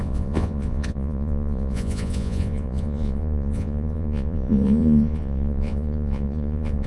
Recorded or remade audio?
remade